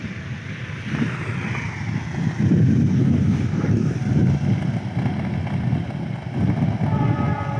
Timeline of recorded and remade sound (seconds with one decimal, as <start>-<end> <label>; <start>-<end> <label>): 0.0-2.9 recorded; 2.9-4.0 remade; 4.0-7.6 recorded